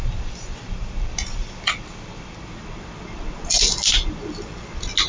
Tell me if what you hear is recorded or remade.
recorded